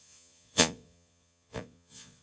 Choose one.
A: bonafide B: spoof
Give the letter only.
B